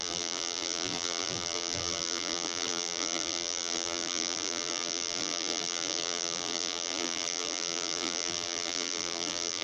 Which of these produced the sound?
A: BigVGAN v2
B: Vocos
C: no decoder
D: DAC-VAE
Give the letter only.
A